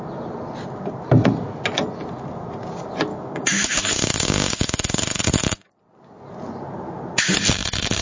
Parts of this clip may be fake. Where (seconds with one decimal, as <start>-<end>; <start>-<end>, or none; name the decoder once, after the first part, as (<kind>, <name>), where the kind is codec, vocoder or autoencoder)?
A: 3.1-5.3 (codec, DAC)